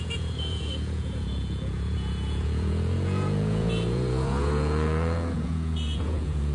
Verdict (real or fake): fake